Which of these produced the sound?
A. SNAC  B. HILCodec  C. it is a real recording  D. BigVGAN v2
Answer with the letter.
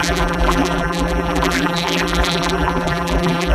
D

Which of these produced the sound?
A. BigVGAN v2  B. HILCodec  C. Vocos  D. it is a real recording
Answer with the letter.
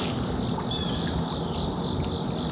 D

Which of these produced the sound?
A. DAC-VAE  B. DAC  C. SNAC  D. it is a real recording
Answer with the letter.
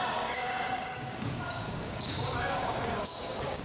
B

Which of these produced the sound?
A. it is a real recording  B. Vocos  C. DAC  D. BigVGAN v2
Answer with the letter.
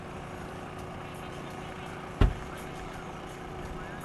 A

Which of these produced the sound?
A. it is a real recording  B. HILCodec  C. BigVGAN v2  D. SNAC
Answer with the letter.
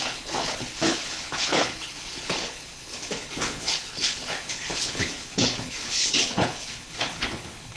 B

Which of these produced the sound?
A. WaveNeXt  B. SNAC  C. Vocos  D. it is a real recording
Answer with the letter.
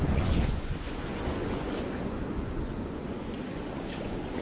C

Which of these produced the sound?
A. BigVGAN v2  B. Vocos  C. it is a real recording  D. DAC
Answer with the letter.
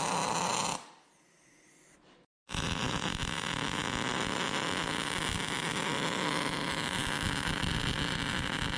C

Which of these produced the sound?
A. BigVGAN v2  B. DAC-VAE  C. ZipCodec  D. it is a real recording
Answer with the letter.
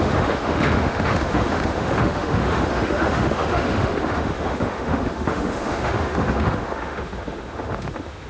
B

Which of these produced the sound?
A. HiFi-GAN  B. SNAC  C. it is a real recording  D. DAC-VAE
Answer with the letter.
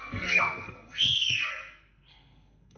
B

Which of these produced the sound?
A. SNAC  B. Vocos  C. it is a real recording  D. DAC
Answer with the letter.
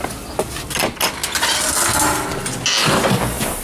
C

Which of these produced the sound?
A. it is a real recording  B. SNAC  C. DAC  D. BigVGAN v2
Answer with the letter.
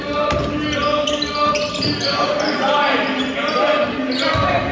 A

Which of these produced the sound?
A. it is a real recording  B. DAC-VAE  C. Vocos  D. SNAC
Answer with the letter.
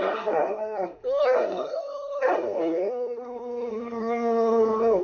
D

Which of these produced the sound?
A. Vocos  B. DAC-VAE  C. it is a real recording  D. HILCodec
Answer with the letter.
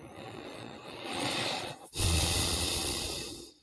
A